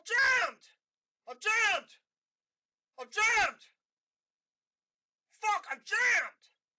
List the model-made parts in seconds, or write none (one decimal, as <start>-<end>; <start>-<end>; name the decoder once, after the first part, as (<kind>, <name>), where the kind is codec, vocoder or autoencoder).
none